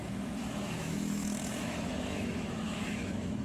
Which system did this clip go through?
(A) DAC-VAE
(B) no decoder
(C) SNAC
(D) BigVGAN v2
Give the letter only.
A